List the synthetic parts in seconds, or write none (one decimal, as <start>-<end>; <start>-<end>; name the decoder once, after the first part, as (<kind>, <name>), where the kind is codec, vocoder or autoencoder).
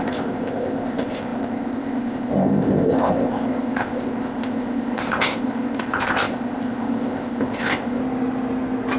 0.0-8.0 (codec, ZipCodec)